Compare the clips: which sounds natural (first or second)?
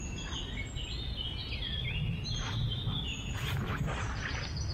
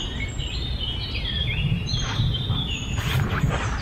first